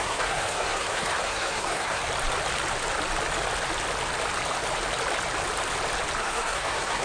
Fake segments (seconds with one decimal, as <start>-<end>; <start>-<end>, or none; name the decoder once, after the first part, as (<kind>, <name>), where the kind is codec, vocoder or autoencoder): 0.0-2.0 (codec, SNAC); 6.2-7.0